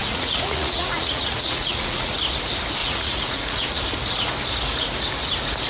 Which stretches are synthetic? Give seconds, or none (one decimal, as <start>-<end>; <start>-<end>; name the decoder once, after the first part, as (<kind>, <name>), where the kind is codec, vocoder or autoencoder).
0.0-2.1 (vocoder, Vocos); 2.8-3.8